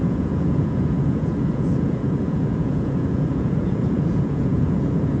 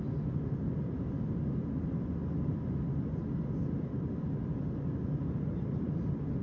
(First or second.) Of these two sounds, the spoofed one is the first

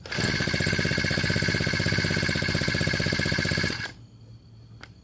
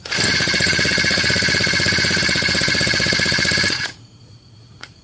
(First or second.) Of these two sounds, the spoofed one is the second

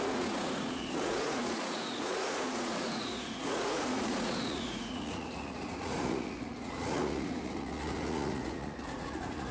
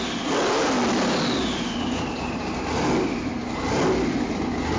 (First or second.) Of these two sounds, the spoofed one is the first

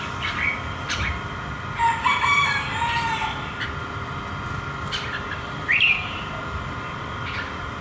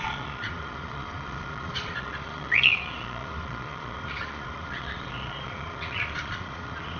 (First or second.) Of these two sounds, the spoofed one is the second